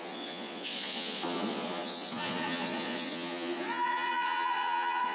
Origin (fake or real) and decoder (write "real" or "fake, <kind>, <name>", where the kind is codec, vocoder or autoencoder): fake, vocoder, Vocos